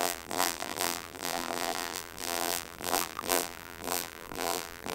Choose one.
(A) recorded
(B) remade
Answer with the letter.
B